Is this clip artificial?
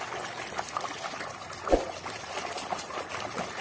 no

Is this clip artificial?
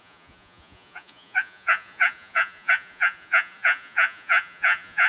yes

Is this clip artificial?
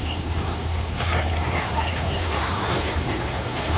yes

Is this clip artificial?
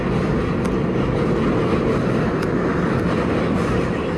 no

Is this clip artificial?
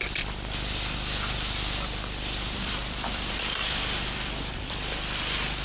yes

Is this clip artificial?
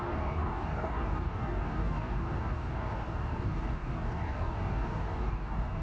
yes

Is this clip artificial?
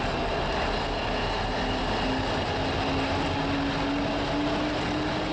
no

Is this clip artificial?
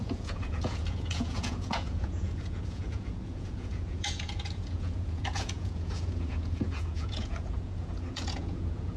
yes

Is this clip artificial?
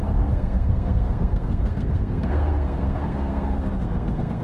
yes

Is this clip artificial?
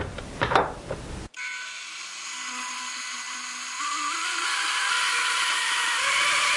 no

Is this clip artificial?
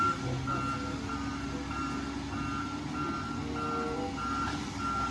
no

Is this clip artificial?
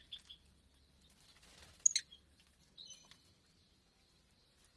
no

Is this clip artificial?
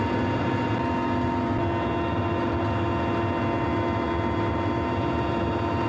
no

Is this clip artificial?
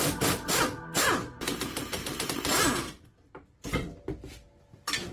no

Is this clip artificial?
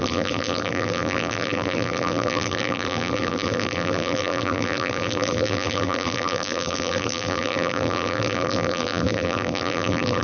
yes